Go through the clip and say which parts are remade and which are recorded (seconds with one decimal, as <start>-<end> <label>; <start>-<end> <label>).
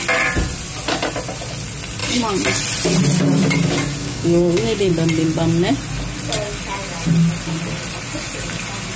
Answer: 0.0-4.0 recorded; 4.0-4.9 remade; 4.9-9.0 recorded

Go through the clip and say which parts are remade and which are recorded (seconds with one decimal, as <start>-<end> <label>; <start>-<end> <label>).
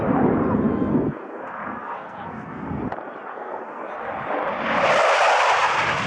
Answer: 0.0-0.9 recorded; 0.9-2.8 remade; 2.8-3.3 recorded; 3.3-3.9 remade; 3.9-6.1 recorded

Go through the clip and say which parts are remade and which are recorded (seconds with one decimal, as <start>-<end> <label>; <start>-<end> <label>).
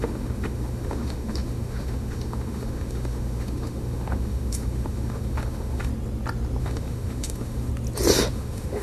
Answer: 0.0-5.9 remade; 5.9-6.6 recorded; 6.6-7.7 remade; 7.7-8.3 recorded; 8.3-8.8 remade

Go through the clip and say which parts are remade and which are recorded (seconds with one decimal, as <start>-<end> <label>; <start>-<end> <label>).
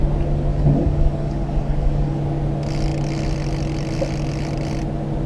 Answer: 0.0-0.5 recorded; 0.5-2.2 remade; 2.2-5.3 recorded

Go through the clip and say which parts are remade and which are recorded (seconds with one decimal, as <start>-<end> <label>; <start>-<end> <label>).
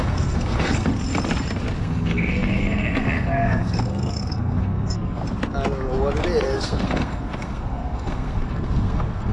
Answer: 0.0-0.9 remade; 0.9-1.8 recorded; 1.8-5.2 remade; 5.2-6.4 recorded; 6.4-9.3 remade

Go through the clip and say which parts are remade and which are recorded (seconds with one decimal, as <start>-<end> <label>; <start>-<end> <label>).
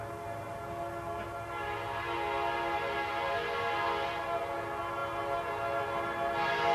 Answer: 0.0-6.7 recorded